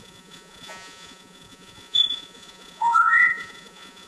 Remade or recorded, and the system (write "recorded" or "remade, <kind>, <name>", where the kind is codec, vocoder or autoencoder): remade, vocoder, Vocos